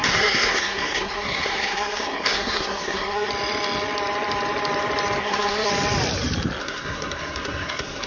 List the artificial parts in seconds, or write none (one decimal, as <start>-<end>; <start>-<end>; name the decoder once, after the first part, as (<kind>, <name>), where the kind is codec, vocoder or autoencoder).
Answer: 0.0-3.3 (codec, SNAC); 5.2-5.7; 6.6-8.1